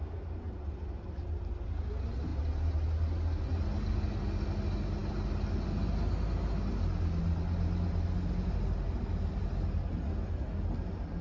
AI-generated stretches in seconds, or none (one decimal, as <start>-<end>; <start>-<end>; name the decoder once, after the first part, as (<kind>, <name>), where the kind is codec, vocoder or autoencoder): none